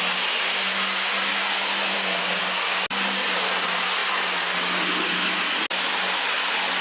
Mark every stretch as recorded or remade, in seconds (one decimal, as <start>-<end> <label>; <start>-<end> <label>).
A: 0.0-6.8 recorded